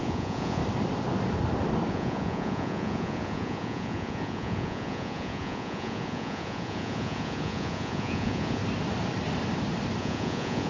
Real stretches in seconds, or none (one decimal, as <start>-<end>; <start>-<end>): 0.6-1.9; 8.6-10.0